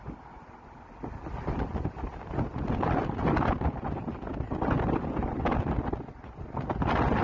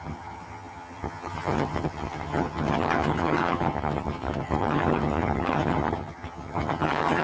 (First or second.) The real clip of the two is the first